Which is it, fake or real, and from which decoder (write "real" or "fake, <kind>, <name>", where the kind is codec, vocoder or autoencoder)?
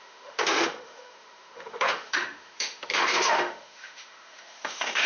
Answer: fake, autoencoder, DAC-VAE